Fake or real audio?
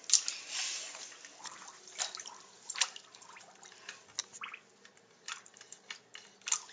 real